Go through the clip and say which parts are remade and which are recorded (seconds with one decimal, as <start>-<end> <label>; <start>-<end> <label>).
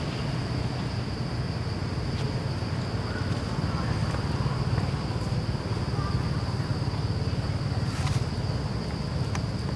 0.0-9.8 recorded